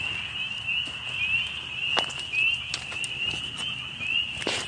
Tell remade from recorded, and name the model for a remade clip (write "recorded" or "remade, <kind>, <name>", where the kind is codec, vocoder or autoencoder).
recorded